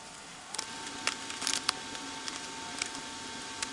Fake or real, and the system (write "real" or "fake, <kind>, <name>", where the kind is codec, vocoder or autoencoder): real